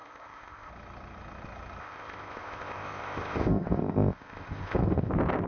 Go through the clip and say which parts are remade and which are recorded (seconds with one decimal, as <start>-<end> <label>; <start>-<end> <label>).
0.0-0.7 remade; 0.7-1.8 recorded; 1.8-5.1 remade; 5.1-5.5 recorded